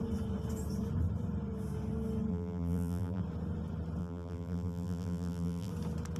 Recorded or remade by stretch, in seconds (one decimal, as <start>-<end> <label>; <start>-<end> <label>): 0.0-2.3 recorded; 2.3-3.2 remade; 3.2-4.0 recorded; 4.0-5.7 remade; 5.7-6.2 recorded

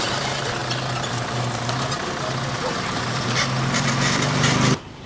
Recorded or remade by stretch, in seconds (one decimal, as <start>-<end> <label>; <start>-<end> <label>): 0.0-0.6 remade; 0.6-2.7 recorded; 2.7-5.1 remade

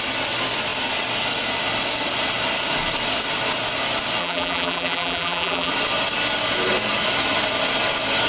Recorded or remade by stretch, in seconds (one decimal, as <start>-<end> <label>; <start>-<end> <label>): 0.0-4.2 recorded; 4.2-5.7 remade; 5.7-8.3 recorded

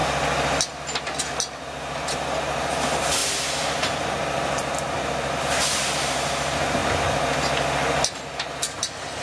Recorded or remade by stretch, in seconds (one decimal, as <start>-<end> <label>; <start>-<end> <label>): 0.0-9.2 recorded

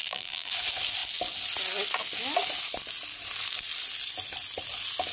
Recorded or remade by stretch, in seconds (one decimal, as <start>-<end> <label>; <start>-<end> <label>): 0.0-0.5 remade; 0.5-5.1 recorded

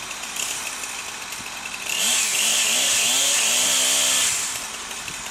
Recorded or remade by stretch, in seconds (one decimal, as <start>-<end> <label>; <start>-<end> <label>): 0.0-0.6 remade; 0.6-1.8 recorded; 1.8-2.5 remade; 2.5-4.2 recorded; 4.2-5.3 remade

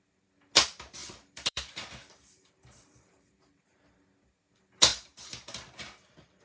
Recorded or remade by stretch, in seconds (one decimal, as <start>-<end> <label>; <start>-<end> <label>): 0.0-1.0 recorded; 1.0-3.3 remade; 3.3-4.9 recorded; 4.9-6.4 remade

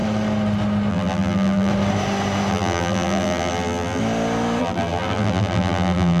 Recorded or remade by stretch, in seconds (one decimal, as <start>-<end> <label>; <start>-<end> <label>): 0.0-0.9 recorded; 0.9-1.7 remade; 1.7-2.5 recorded; 2.5-4.0 remade; 4.0-4.6 recorded; 4.6-6.2 remade